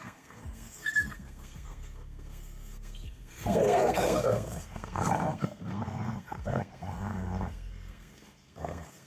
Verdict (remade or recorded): remade